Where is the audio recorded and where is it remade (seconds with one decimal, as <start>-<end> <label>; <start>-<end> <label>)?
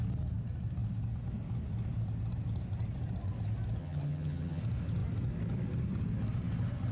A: 0.0-3.8 recorded; 3.8-4.6 remade; 4.6-6.9 recorded